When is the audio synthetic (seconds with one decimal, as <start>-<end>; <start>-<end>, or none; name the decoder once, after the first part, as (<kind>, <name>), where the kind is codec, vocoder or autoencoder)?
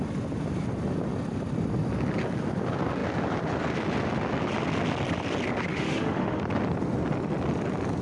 5.7-6.4 (autoencoder, DAC-VAE)